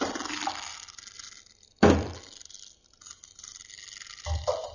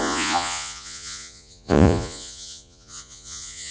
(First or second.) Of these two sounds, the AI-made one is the second